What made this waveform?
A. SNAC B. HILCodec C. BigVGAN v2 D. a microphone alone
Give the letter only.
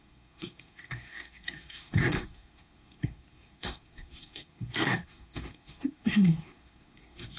A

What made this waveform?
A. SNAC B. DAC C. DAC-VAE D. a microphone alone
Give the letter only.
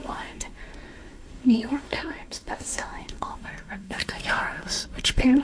A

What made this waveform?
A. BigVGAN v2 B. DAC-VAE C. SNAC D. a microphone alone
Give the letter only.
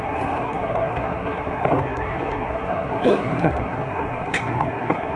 C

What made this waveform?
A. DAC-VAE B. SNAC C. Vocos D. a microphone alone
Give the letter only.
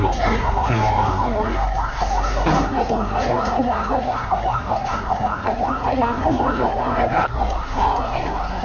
B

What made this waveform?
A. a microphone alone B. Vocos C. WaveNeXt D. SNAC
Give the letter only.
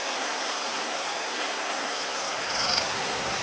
D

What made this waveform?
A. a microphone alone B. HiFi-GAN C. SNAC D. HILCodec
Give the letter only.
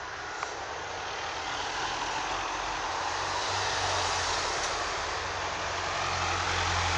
A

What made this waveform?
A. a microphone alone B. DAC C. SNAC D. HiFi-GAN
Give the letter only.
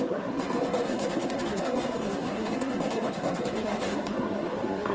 C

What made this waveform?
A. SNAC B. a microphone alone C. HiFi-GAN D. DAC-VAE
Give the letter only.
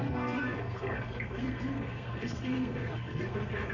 A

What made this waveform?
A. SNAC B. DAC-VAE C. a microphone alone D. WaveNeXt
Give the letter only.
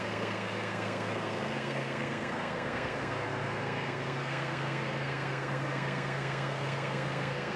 A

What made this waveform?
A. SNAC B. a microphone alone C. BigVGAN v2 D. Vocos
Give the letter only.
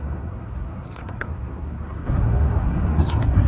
A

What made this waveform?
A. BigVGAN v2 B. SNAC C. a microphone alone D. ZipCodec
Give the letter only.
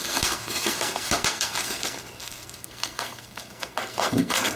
B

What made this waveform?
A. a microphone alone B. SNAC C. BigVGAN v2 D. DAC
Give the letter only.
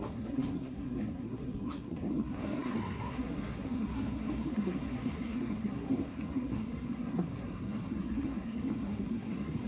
B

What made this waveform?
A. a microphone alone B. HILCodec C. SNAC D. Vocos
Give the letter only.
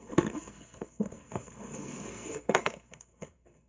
C